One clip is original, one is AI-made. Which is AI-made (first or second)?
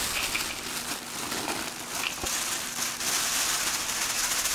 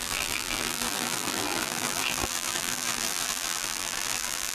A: second